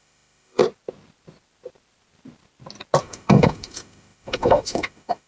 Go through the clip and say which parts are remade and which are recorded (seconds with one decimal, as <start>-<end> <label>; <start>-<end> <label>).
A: 0.0-0.6 remade; 0.6-3.0 recorded; 3.0-5.3 remade